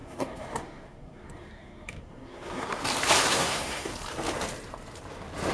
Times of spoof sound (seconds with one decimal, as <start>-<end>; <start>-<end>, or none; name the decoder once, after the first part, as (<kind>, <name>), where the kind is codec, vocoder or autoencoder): 0.0-2.8 (codec, SNAC); 3.3-3.9